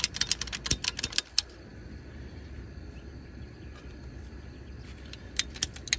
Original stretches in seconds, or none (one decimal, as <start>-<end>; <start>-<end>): 0.0-6.0